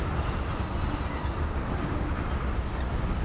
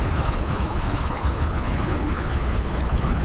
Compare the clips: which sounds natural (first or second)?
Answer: first